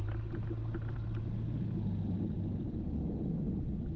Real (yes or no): yes